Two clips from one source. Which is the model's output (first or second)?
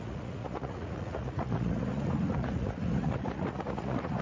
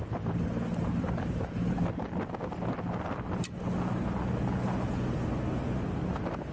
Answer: first